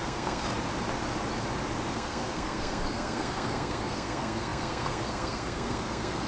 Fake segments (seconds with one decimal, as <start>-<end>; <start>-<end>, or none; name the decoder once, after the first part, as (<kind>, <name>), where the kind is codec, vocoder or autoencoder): 0.0-0.5 (codec, SNAC); 1.9-6.3

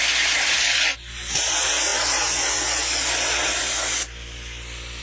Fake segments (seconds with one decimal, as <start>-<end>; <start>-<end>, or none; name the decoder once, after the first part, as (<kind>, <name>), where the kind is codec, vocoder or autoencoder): none

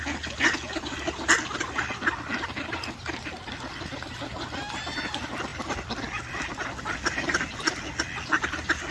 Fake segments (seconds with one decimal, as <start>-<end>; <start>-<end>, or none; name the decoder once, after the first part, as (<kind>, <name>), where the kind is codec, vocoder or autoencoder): none

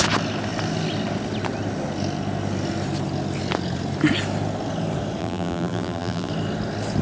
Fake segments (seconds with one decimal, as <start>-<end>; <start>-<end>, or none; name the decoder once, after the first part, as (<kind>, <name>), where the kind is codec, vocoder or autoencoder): 5.2-6.3 (vocoder, BigVGAN v2)

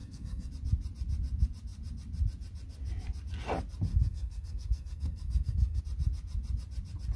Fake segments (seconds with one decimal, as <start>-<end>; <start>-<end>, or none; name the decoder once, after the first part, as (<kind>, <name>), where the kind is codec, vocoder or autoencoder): 0.0-0.5 (codec, SNAC); 3.9-5.8

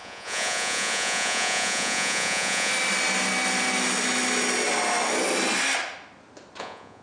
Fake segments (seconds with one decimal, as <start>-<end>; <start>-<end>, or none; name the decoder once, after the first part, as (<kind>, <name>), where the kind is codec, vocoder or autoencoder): 0.0-2.7 (vocoder, Vocos); 6.6-7.0